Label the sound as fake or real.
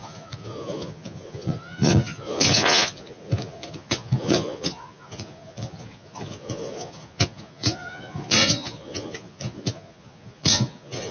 fake